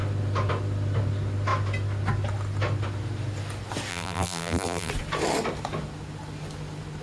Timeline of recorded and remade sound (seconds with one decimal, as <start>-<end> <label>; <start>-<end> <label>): 0.0-3.9 recorded; 3.9-4.9 remade; 4.9-7.0 recorded